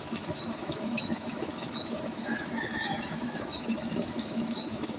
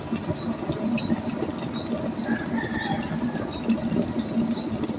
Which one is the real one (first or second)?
second